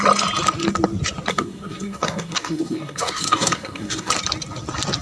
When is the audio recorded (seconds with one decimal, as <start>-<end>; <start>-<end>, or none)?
0.0-1.3; 4.1-5.0